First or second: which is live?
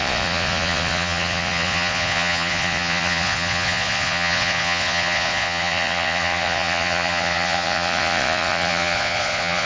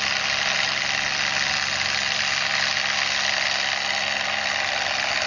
second